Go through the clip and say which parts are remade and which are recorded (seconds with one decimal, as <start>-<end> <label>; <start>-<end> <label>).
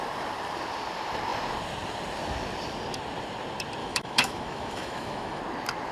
0.0-3.8 recorded; 3.8-5.4 remade; 5.4-5.9 recorded